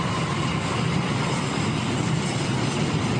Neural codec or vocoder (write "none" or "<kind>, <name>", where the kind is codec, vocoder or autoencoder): none